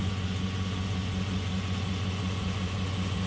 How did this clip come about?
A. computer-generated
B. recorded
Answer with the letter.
A